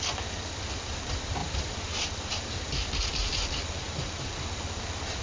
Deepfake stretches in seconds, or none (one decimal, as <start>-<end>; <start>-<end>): 1.4-2.0